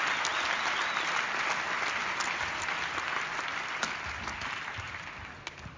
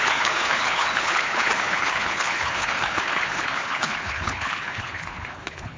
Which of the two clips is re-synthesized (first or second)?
second